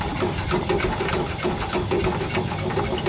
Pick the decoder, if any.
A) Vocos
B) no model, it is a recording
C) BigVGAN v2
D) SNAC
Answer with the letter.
B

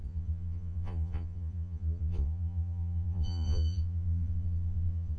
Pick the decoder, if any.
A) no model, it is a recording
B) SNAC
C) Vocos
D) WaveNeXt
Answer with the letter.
C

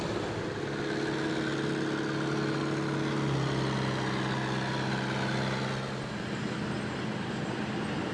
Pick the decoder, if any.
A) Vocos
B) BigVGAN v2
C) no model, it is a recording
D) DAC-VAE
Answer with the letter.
C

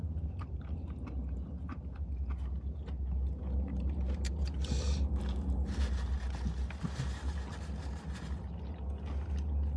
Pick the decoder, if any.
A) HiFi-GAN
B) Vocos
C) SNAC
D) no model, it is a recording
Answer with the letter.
D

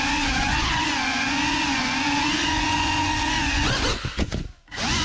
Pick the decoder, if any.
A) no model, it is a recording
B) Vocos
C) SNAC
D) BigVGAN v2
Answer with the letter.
B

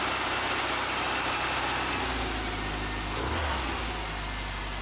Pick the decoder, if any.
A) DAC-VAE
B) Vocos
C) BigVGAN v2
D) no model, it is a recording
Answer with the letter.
D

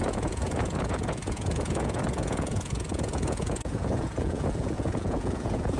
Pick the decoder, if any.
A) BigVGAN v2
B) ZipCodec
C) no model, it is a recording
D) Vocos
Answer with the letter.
D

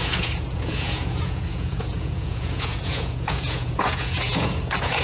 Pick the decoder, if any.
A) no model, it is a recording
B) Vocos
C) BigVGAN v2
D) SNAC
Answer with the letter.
B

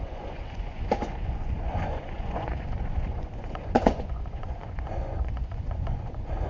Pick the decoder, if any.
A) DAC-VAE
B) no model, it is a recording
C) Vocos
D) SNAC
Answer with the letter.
C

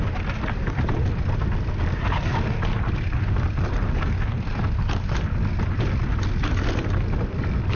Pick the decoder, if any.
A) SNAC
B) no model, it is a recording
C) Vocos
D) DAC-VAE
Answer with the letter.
B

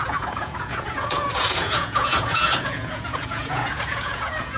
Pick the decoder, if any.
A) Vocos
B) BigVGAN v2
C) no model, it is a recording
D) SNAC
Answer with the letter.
A